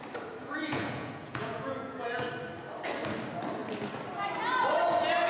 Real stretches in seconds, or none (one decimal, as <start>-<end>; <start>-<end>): 0.0-0.4; 2.3-5.3